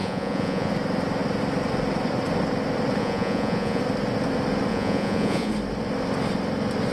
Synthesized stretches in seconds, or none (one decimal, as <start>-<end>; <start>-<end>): 0.0-0.7; 3.0-3.8; 4.7-5.5

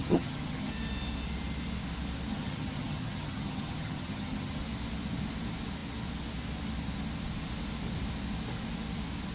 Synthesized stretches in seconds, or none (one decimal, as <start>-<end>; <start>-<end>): 0.0-0.7; 2.3-4.6

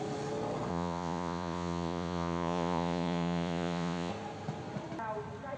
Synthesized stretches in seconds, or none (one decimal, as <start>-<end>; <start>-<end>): 0.7-4.1

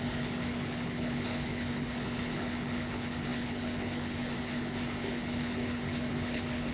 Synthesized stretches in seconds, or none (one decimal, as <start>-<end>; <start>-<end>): 0.0-6.7

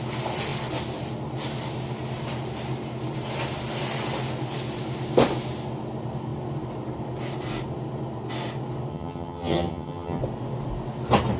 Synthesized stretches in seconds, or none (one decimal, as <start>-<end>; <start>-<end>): 8.9-10.2